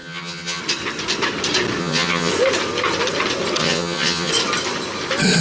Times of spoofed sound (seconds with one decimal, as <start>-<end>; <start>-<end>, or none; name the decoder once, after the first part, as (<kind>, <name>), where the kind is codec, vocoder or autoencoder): 0.0-0.6 (vocoder, HiFi-GAN); 1.8-2.3; 3.6-4.3